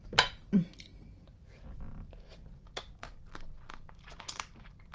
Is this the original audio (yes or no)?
yes